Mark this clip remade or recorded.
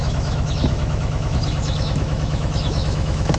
remade